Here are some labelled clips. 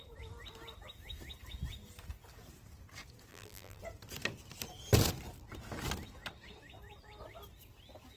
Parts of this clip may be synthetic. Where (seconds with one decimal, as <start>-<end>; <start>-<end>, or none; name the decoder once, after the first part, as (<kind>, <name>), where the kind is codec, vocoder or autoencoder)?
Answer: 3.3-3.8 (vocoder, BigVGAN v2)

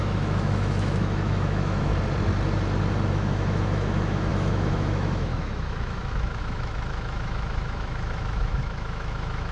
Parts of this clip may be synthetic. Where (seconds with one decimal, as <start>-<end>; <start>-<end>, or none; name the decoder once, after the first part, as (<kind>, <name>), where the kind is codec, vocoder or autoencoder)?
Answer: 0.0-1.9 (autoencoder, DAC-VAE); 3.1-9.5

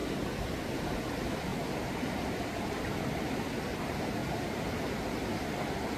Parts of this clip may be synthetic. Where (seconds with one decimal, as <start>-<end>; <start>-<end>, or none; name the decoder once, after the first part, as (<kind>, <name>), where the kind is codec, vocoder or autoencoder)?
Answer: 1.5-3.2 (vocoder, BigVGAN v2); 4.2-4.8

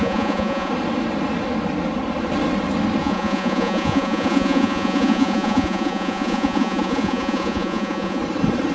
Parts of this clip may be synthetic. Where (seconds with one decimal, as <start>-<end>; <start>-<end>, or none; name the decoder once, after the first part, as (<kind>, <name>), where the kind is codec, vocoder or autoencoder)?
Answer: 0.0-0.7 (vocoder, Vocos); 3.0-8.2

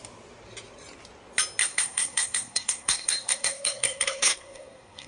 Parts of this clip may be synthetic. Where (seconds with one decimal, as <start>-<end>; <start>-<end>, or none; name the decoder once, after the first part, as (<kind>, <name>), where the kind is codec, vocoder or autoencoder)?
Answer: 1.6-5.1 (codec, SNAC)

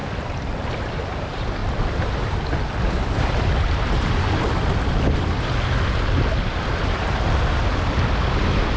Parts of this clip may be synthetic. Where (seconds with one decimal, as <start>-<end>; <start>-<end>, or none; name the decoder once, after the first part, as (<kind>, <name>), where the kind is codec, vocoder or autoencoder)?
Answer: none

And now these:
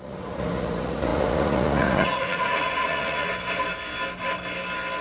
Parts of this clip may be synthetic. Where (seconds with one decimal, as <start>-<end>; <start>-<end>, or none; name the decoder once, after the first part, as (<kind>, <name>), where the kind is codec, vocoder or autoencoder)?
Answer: 0.0-3.3 (vocoder, Vocos)